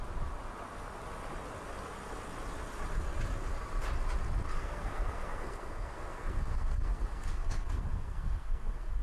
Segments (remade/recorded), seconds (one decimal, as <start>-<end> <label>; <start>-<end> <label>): 0.0-4.6 recorded; 4.6-9.0 remade